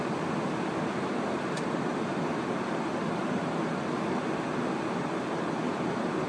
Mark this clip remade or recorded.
recorded